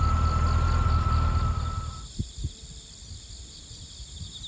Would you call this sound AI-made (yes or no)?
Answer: no